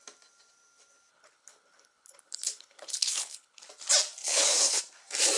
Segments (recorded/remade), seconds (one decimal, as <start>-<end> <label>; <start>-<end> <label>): 0.0-1.1 recorded; 1.1-3.7 remade; 3.7-4.2 recorded; 4.2-4.8 remade; 4.8-5.4 recorded